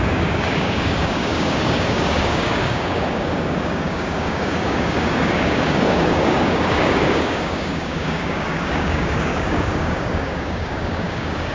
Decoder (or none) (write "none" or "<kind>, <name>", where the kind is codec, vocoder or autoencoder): codec, DAC